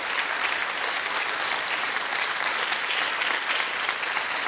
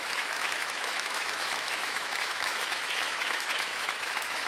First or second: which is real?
first